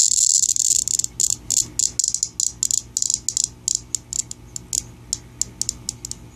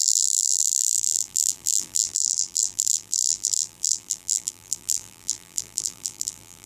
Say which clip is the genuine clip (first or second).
first